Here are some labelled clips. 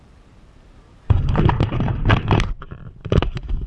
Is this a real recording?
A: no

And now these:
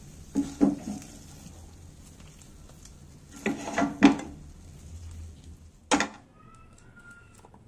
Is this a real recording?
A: yes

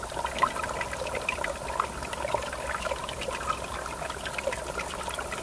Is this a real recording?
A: yes